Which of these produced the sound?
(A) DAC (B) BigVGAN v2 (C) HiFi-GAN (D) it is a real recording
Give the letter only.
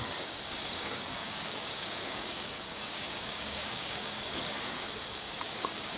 A